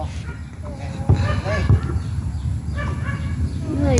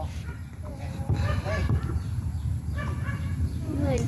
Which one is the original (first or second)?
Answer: first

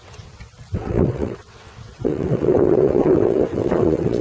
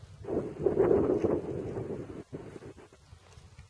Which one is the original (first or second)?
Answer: second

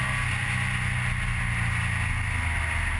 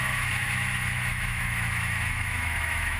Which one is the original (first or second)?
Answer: first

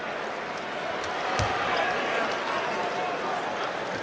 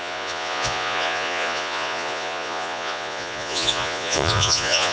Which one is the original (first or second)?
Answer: first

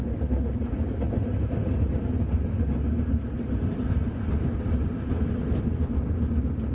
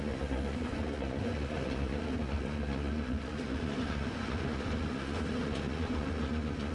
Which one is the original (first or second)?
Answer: first